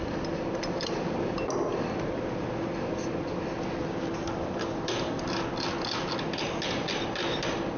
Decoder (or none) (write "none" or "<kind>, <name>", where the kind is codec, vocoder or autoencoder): none